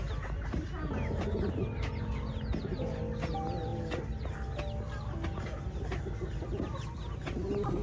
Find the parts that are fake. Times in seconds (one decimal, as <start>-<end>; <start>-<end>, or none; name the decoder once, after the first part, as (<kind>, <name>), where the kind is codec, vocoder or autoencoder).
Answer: none